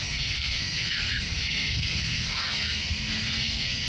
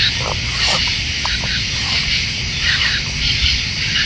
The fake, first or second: first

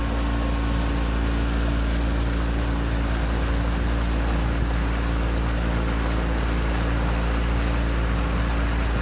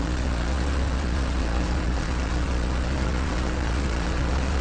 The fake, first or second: second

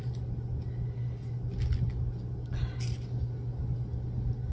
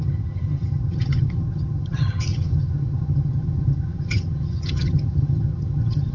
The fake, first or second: second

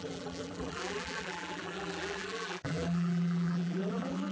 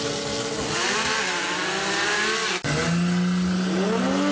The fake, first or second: first